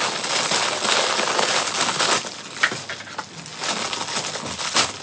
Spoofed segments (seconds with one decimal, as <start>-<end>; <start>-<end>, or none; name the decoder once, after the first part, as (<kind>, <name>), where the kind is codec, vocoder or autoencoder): none